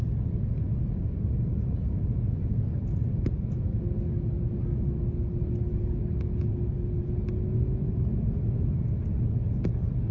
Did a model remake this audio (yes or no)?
no